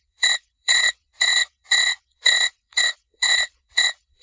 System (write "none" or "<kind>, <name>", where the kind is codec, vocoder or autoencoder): vocoder, WaveNeXt